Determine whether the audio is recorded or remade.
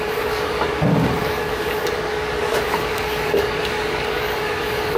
remade